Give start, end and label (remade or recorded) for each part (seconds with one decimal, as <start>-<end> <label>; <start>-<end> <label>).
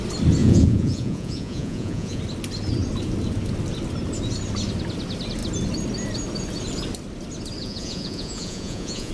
0.0-0.4 recorded; 0.4-2.2 remade; 2.2-7.6 recorded; 7.6-9.1 remade